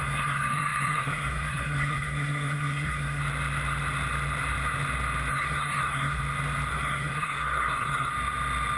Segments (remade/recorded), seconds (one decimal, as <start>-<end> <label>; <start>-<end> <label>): 0.0-3.2 remade; 3.2-5.3 recorded; 5.3-6.2 remade; 6.2-6.7 recorded; 6.7-8.1 remade; 8.1-8.8 recorded